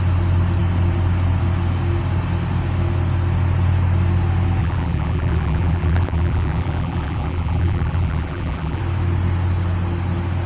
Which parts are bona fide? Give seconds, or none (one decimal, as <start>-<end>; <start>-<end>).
0.0-4.6; 8.8-10.5